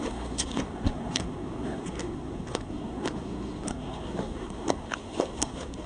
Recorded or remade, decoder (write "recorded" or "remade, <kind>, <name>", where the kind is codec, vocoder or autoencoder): remade, codec, SNAC